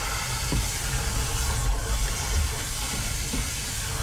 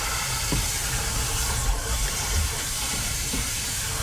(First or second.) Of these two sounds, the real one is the first